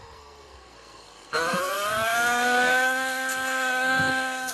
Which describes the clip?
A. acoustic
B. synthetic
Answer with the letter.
B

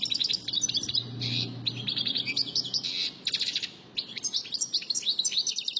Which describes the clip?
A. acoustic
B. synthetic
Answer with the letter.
A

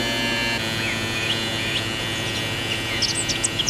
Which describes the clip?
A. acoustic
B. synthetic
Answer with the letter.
A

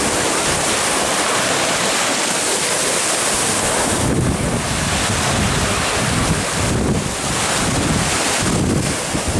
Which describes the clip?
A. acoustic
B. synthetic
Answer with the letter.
A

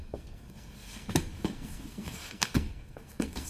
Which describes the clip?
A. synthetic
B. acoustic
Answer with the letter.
A